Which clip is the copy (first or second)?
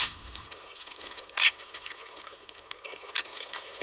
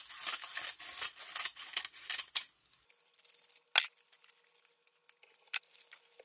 first